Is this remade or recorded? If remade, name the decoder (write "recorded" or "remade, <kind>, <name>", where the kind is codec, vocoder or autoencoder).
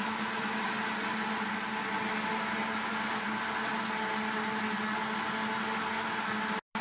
recorded